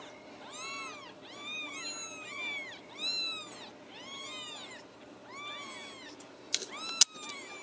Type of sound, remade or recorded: recorded